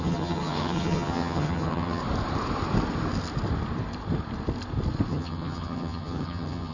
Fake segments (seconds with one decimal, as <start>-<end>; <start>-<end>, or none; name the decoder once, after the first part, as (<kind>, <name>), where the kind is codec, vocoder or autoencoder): 0.0-2.0 (vocoder, HiFi-GAN); 5.1-6.7